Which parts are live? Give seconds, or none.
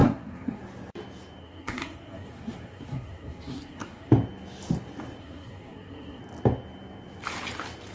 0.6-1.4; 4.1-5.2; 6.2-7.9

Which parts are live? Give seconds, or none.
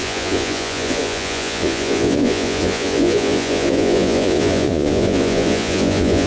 none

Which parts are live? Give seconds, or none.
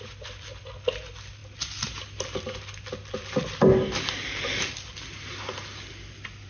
0.0-6.5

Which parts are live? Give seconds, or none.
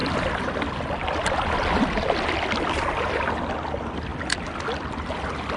0.0-5.6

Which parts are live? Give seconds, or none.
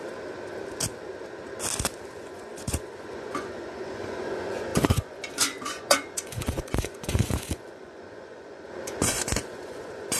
0.0-2.1